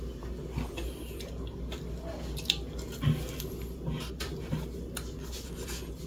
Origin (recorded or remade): recorded